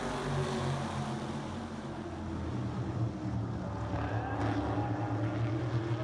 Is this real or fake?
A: real